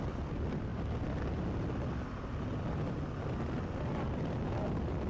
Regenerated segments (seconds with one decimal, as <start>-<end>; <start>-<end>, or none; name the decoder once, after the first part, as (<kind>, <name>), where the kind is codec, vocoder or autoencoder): none